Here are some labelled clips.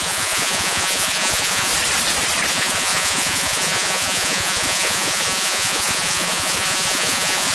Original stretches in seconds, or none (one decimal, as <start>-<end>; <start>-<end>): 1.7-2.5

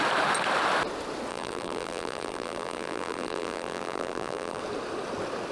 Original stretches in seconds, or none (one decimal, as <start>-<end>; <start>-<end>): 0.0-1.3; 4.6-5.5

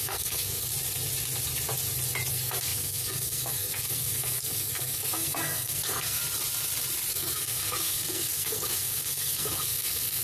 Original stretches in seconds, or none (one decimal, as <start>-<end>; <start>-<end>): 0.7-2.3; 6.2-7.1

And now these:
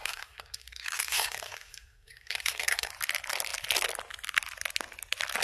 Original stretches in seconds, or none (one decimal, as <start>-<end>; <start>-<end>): 2.9-5.4